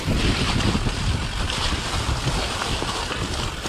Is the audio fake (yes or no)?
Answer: no